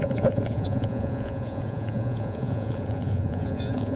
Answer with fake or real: fake